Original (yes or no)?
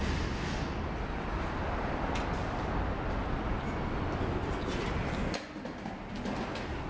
yes